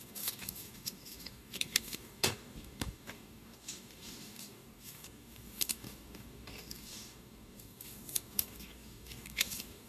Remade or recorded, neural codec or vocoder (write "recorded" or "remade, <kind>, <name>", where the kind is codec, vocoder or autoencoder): remade, codec, DAC